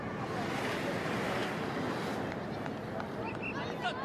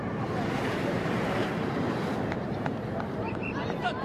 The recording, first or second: first